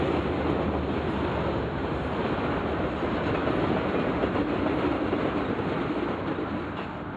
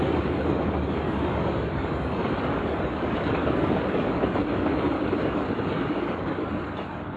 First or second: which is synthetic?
second